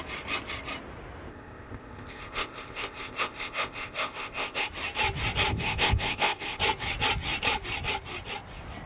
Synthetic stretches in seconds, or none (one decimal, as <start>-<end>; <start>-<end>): 1.3-4.7; 5.5-6.6